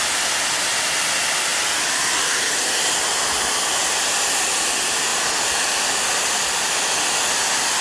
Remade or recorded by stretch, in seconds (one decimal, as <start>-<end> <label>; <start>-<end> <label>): 0.0-7.8 recorded